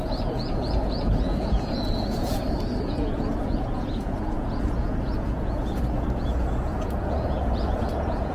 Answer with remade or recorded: remade